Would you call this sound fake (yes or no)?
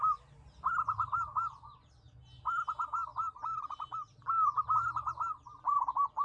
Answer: no